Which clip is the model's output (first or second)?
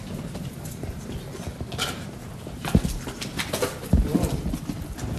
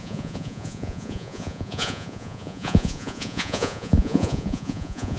second